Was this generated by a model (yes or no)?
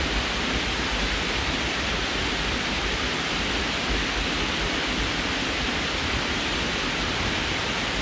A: no